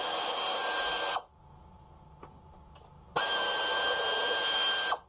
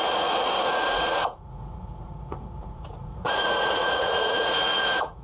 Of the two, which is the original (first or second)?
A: first